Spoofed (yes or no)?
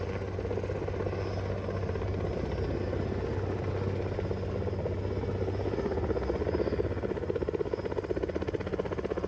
no